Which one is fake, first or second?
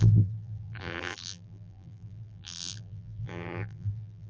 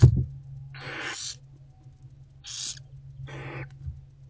first